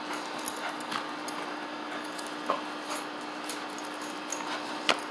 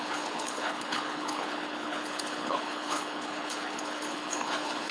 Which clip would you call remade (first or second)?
second